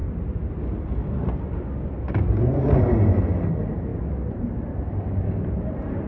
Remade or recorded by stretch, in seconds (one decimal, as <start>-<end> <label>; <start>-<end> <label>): 0.0-6.1 recorded